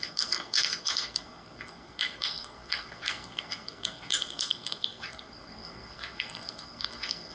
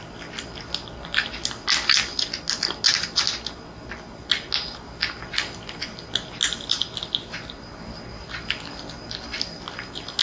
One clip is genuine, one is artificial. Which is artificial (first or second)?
first